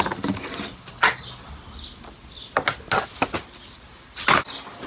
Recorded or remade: recorded